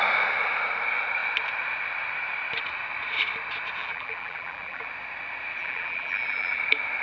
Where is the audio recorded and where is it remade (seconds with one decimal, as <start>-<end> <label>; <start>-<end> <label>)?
0.0-3.8 recorded; 3.8-4.9 remade; 4.9-5.6 recorded; 5.6-6.6 remade; 6.6-7.0 recorded